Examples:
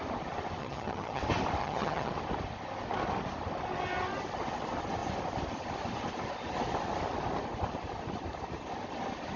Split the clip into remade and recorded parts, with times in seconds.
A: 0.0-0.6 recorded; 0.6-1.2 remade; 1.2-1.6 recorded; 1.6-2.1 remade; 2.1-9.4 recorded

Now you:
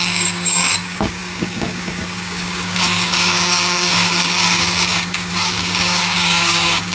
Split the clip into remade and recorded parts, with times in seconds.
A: 0.0-6.9 remade

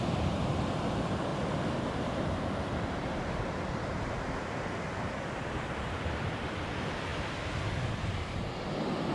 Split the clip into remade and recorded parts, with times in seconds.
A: 0.0-1.3 remade; 1.3-2.9 recorded; 2.9-9.1 remade

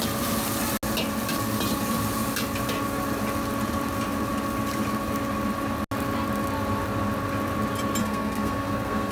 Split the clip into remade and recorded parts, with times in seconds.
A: 0.0-8.0 recorded; 8.0-9.1 remade

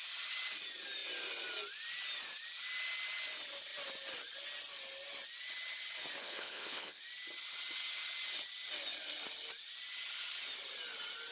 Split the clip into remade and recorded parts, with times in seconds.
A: 0.0-6.2 recorded; 6.2-7.0 remade; 7.0-11.3 recorded

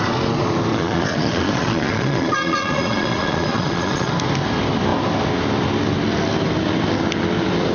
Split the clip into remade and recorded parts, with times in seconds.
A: 0.0-0.7 recorded; 0.7-4.1 remade; 4.1-7.7 recorded

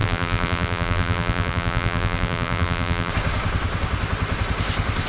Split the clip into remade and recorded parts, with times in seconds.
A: 0.0-3.1 remade; 3.1-5.1 recorded

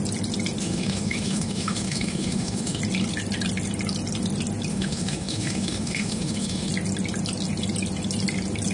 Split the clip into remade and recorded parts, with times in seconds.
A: 0.0-0.6 recorded; 0.6-2.8 remade; 2.8-4.7 recorded; 4.7-6.7 remade; 6.7-8.7 recorded